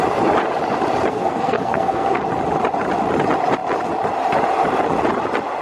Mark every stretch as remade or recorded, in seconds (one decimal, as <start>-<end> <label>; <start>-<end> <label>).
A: 0.0-1.1 recorded; 1.1-2.2 remade; 2.2-5.6 recorded